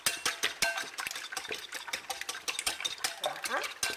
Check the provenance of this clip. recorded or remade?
recorded